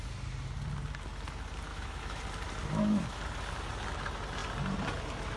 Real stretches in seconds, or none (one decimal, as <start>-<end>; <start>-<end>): 0.0-1.7; 2.2-2.6; 3.2-5.4